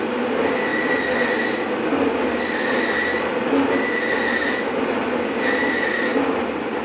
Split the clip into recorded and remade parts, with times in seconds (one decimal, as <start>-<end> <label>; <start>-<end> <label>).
0.0-6.8 recorded